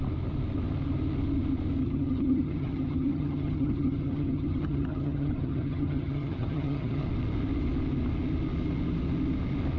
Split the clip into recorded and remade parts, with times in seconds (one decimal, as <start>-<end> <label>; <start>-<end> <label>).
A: 0.0-1.8 recorded; 1.8-7.1 remade; 7.1-9.8 recorded